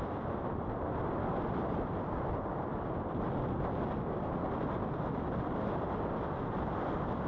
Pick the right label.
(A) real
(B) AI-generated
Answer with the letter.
A